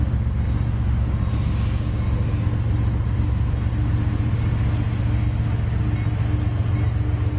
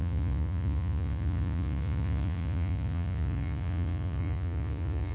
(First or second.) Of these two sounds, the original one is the first